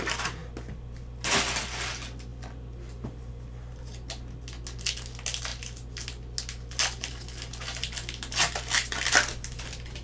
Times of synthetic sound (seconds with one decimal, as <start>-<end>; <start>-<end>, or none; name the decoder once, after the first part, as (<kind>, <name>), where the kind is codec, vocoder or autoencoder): none